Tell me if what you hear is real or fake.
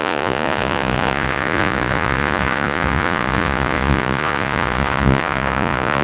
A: fake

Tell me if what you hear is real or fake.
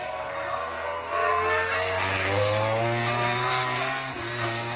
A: fake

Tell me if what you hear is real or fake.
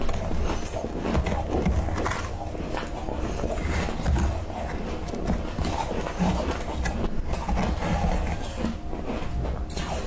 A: real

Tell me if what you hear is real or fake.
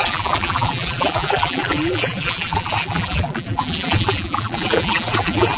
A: fake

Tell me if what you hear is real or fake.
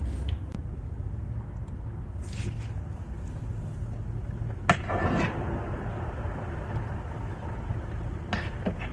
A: real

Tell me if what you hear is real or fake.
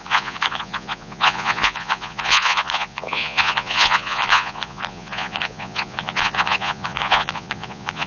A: fake